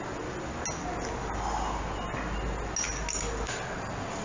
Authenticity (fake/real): real